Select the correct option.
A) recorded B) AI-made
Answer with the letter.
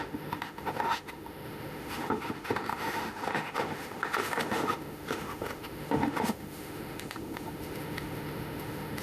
B